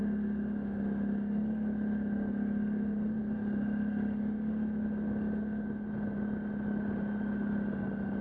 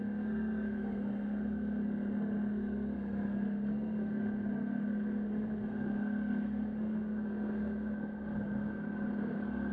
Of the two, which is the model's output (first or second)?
second